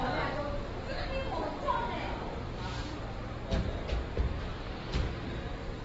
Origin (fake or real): real